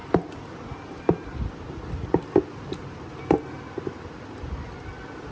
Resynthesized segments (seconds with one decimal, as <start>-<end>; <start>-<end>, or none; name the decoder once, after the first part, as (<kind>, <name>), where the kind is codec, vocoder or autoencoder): none